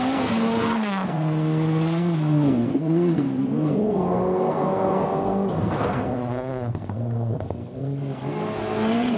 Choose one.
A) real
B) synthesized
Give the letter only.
B